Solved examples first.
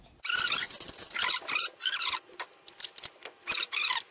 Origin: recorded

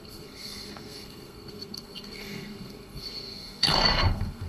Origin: remade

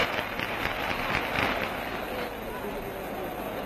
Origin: recorded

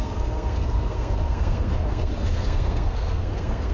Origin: remade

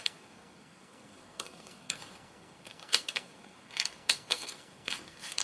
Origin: remade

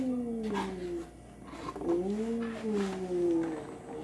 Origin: recorded